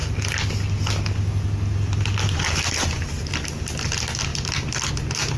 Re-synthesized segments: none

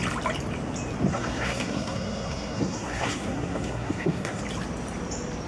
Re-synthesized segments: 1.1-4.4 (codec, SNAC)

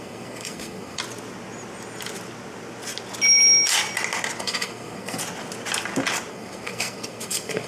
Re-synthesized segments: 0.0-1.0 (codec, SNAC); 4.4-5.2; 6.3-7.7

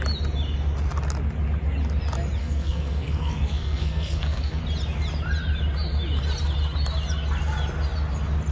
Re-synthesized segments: 2.4-4.6 (codec, SNAC)

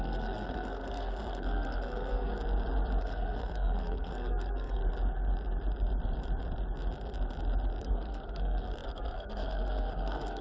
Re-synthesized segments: 0.0-2.3 (codec, SNAC); 3.0-4.8; 7.8-10.4

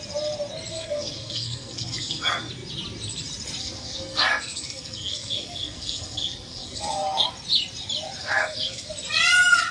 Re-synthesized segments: 0.7-2.5 (codec, SNAC); 3.6-7.3; 8.2-8.9